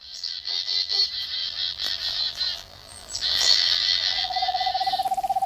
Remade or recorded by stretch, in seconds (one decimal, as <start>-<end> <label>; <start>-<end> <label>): 0.0-1.0 remade; 1.0-1.4 recorded; 1.4-4.7 remade; 4.7-5.5 recorded